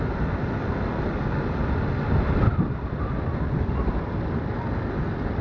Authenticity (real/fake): real